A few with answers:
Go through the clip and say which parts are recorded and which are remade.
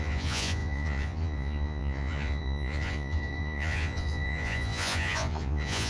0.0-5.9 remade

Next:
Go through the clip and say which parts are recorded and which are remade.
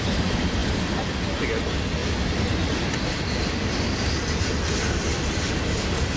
0.0-6.2 recorded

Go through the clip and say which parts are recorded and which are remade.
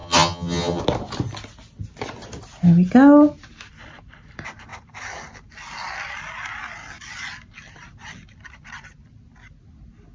0.0-0.8 remade; 0.8-10.1 recorded